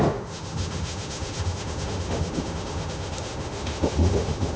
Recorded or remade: remade